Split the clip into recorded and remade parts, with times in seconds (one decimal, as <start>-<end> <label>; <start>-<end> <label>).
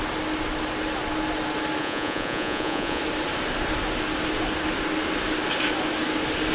0.0-1.8 recorded; 1.8-3.0 remade; 3.0-6.5 recorded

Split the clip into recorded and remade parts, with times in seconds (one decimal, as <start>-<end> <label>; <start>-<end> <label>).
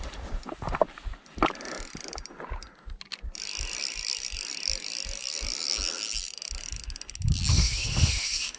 0.0-7.5 recorded; 7.5-8.6 remade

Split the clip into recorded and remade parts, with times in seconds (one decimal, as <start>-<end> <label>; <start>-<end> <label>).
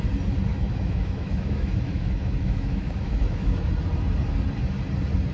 0.0-0.5 recorded; 0.5-3.7 remade; 3.7-5.3 recorded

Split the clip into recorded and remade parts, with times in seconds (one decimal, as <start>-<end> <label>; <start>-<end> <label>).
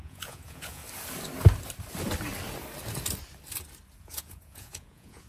0.0-0.8 remade; 0.8-4.0 recorded; 4.0-5.3 remade